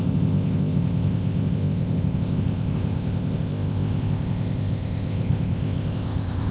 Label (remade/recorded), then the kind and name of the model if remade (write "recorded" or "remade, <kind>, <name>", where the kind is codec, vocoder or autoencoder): remade, codec, ZipCodec